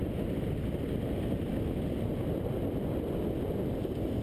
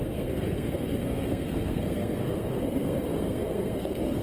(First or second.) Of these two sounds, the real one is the first